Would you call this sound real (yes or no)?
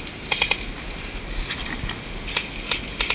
yes